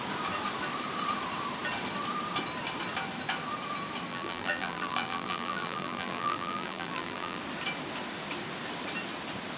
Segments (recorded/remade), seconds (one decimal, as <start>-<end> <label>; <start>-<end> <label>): 0.0-4.1 recorded; 4.1-7.4 remade; 7.4-9.6 recorded